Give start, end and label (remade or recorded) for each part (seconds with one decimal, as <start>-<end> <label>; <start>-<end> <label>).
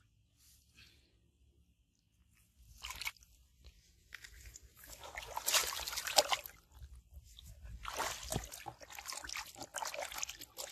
0.0-4.0 recorded; 4.0-4.8 remade; 4.8-5.6 recorded; 5.6-6.3 remade; 6.3-10.7 recorded